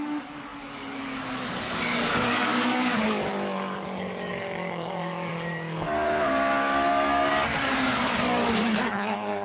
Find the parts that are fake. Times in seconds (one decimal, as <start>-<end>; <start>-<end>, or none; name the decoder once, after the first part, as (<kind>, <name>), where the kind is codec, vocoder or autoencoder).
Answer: 0.0-9.4 (codec, DAC)